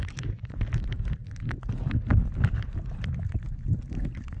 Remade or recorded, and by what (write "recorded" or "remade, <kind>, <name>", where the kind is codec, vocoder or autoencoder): recorded